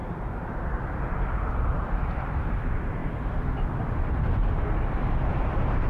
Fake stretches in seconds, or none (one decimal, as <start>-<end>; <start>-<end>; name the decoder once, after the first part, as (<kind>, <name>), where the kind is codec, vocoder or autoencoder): 1.9-3.0 (vocoder, BigVGAN v2); 5.3-5.9